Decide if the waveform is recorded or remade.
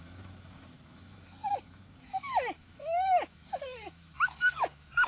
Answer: remade